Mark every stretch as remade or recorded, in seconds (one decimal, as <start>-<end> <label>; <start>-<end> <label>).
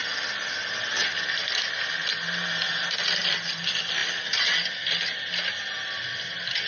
0.0-6.7 recorded